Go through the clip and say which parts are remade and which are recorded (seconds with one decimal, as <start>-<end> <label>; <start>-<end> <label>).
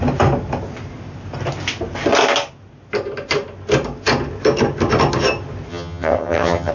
0.0-5.7 recorded; 5.7-6.7 remade